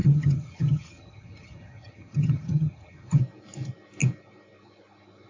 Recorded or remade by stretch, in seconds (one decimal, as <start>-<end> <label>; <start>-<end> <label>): 0.0-3.2 remade; 3.2-5.3 recorded